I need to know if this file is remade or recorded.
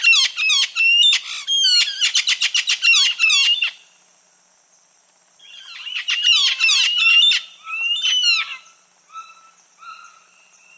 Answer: recorded